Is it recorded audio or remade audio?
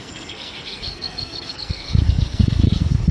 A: remade